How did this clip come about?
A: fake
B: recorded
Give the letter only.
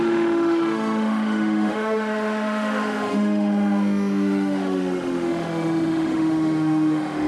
A